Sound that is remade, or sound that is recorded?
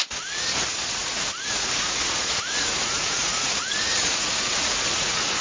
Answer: remade